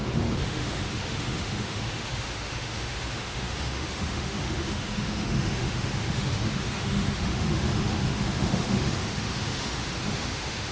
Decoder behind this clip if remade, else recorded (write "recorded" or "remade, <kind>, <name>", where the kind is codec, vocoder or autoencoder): remade, autoencoder, DAC-VAE